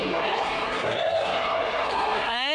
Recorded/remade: remade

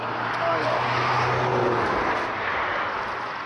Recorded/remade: recorded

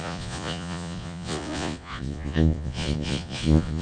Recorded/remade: remade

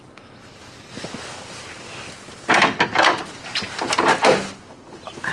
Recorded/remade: recorded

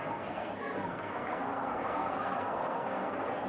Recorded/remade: remade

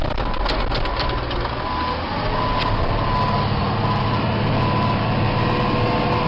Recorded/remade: recorded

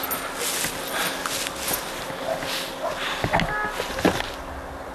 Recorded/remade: recorded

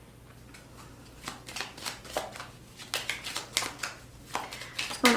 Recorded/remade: recorded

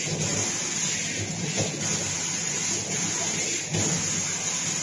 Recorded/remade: recorded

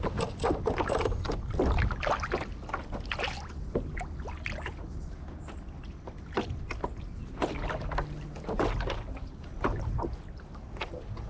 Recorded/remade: recorded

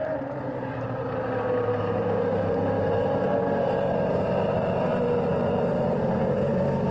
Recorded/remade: remade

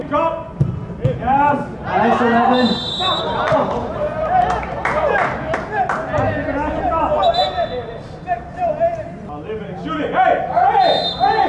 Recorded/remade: recorded